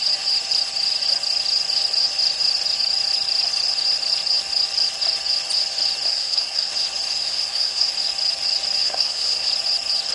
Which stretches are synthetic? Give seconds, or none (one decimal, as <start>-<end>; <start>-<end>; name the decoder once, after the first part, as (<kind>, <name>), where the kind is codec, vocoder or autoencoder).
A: 6.1-6.7 (codec, SNAC); 7.2-7.9; 8.8-9.5